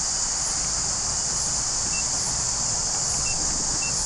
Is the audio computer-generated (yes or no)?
no